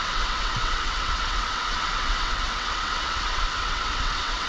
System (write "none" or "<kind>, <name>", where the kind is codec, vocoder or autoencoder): vocoder, WaveNeXt